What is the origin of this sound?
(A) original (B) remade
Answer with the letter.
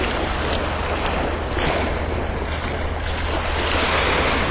A